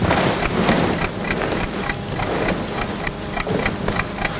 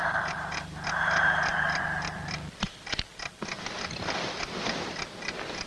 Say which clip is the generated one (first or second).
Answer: second